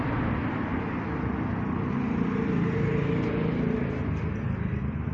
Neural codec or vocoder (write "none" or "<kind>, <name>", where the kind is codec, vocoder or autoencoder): none